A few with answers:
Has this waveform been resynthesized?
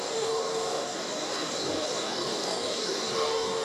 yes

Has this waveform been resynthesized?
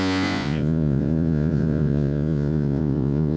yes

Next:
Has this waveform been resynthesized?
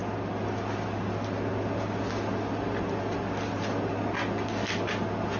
no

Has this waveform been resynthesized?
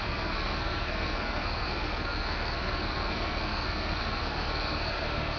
yes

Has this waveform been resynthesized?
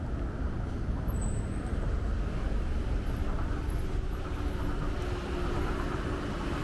no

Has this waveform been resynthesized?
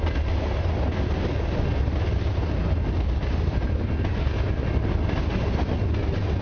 no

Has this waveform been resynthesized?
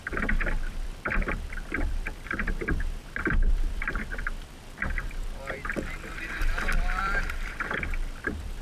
yes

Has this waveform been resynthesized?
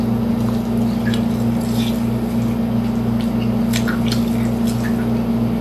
no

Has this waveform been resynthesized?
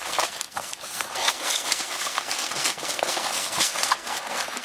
yes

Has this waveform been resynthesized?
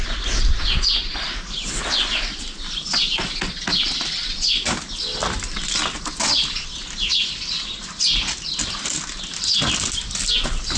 no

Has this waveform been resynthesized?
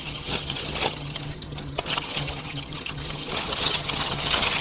yes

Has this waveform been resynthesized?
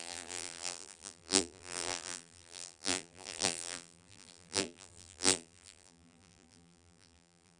yes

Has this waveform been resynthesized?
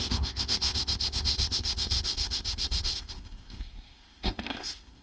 yes